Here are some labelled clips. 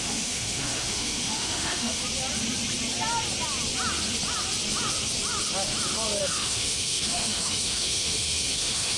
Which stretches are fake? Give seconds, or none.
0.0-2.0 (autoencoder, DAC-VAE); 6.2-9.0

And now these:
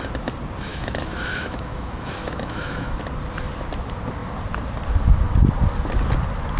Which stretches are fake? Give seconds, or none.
0.7-3.0 (autoencoder, DAC-VAE)

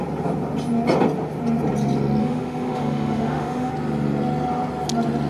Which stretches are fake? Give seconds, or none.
2.2-3.7 (autoencoder, DAC-VAE)

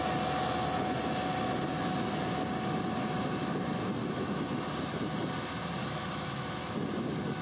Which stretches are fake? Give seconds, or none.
1.7-2.4 (autoencoder, DAC-VAE); 4.0-4.7; 5.8-6.7

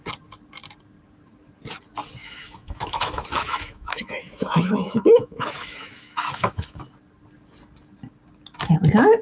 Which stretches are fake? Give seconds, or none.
2.2-6.8 (autoencoder, DAC-VAE)

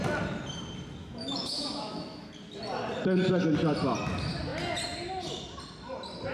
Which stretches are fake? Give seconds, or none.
1.0-2.3 (autoencoder, DAC-VAE)